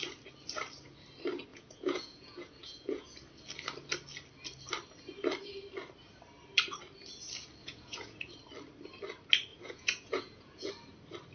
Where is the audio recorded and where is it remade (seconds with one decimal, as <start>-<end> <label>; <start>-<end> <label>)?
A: 0.0-1.5 recorded; 1.5-3.3 remade; 3.3-7.6 recorded; 7.6-8.2 remade; 8.2-9.5 recorded; 9.5-10.7 remade; 10.7-11.3 recorded